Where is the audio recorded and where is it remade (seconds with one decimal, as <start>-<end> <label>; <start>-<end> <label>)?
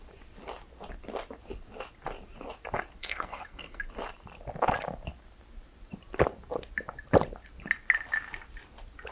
0.0-3.0 recorded; 3.0-3.8 remade; 3.8-9.1 recorded